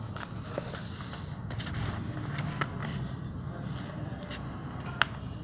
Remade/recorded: recorded